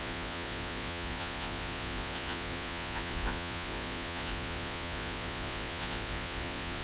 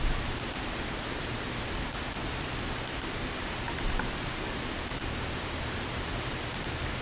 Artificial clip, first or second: first